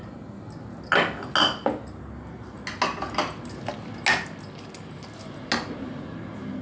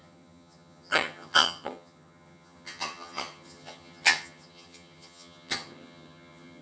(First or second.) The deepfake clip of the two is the second